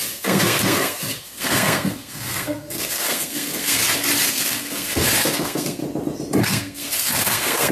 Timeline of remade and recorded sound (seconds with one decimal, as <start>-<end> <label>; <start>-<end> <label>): 0.0-3.8 remade; 3.8-4.3 recorded; 4.3-5.8 remade; 5.8-6.4 recorded; 6.4-7.7 remade